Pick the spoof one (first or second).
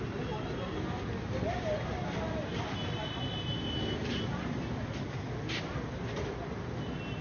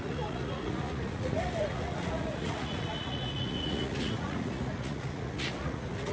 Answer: second